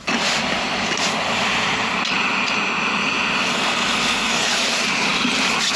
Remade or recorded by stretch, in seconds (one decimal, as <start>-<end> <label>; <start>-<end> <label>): 0.0-3.5 recorded; 3.5-4.5 remade; 4.5-5.8 recorded